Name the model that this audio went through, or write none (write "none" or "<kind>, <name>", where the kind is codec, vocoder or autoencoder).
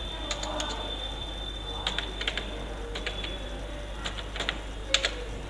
none